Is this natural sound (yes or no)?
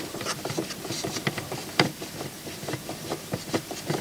no